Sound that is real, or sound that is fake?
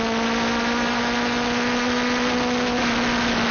real